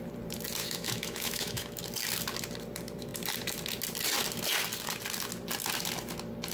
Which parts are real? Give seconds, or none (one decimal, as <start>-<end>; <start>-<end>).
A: 0.0-0.6; 1.8-6.5